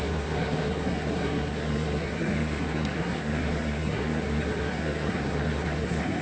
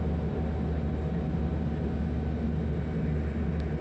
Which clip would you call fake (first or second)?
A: first